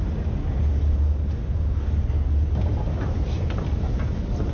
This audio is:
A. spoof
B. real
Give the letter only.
B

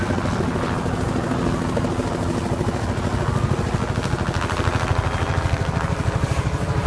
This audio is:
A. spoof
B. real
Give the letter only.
B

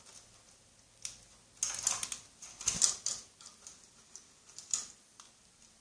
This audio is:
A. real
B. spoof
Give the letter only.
A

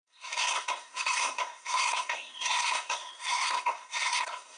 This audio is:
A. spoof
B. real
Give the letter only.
A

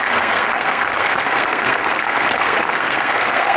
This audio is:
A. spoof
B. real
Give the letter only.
A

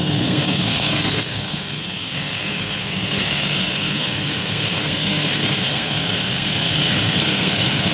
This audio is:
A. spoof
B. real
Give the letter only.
A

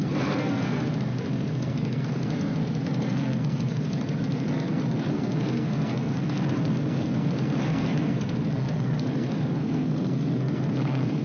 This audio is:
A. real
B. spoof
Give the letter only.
B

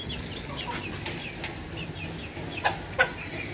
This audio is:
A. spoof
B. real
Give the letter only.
B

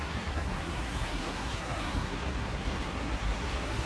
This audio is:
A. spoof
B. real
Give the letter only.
A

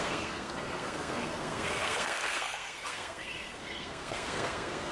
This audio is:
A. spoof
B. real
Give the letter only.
A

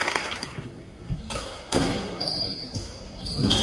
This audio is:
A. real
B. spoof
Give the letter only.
B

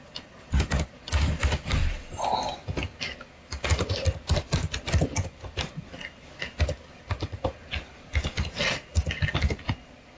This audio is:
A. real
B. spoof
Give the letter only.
A